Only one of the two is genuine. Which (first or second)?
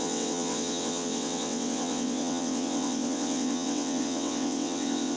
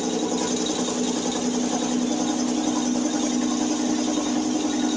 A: second